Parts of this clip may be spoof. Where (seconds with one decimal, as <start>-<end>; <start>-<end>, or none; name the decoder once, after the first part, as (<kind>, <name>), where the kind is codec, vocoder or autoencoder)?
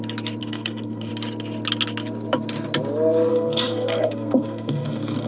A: 0.4-1.1 (codec, SNAC); 3.3-5.3